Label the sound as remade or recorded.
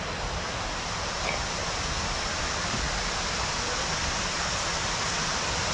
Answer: recorded